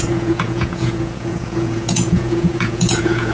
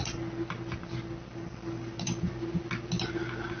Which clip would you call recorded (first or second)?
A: second